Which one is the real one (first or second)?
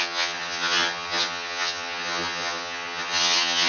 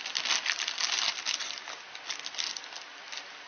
second